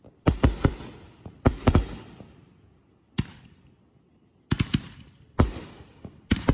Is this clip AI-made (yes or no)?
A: no